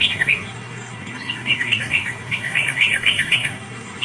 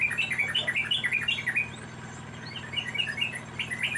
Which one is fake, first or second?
first